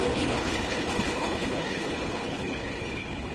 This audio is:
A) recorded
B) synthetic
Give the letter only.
B